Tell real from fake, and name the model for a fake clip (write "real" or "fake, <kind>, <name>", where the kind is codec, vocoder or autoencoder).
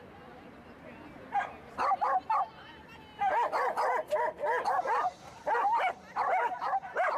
real